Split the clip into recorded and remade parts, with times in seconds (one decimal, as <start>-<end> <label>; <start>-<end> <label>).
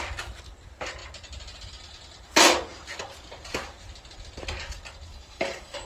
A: 0.0-5.1 recorded; 5.1-5.9 remade